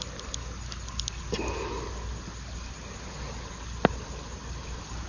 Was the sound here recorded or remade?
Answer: recorded